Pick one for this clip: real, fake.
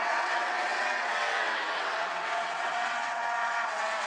fake